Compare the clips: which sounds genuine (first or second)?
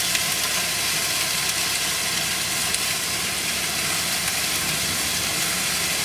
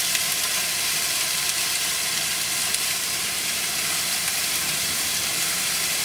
first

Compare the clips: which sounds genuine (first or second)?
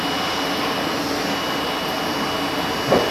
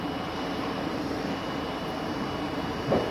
first